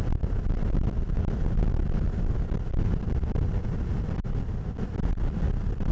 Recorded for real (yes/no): yes